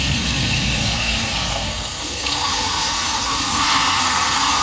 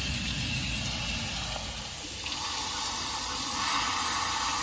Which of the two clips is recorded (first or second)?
second